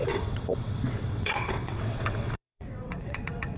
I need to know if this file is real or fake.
fake